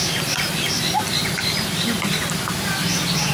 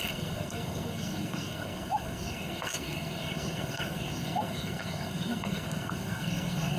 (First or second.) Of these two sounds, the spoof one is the second